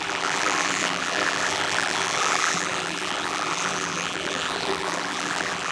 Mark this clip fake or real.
fake